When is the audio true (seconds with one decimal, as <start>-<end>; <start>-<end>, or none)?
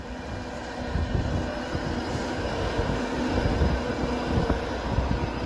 0.0-2.5; 3.3-5.5